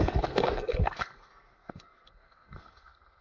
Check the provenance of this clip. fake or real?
fake